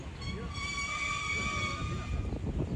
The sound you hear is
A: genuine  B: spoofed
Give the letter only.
A